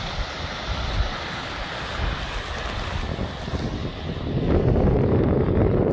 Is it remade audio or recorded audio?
recorded